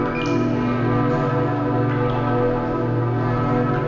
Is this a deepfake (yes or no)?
no